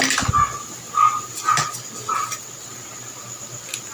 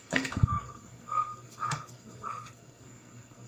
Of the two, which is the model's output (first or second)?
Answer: second